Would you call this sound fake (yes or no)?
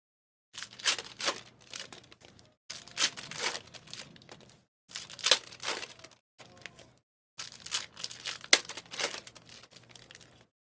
no